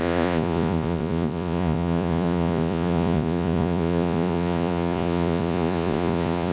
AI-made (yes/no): yes